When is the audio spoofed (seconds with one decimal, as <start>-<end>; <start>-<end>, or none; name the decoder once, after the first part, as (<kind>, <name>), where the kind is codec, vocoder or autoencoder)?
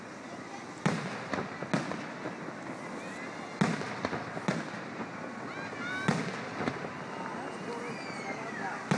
none